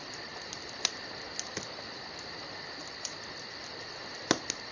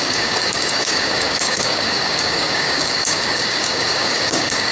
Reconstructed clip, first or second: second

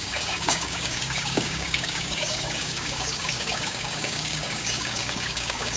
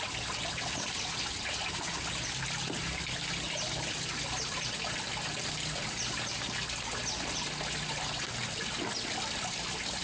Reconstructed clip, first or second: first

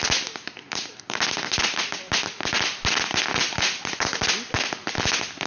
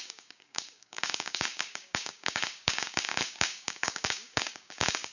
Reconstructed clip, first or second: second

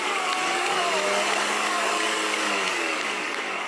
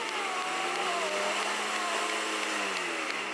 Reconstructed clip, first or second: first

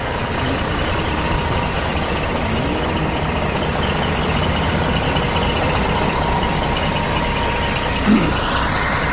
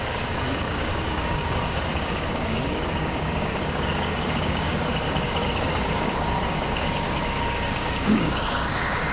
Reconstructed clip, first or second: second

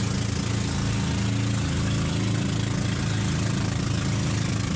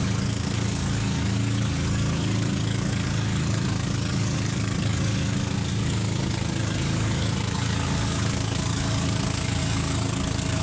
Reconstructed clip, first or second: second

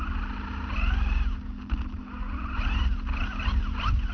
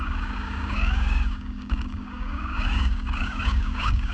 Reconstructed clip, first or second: second